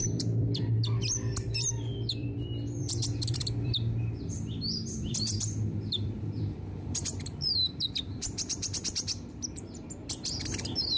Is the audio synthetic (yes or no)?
yes